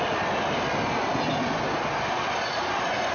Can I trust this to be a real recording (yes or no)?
yes